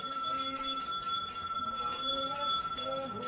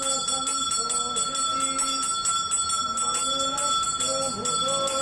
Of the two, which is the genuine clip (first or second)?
second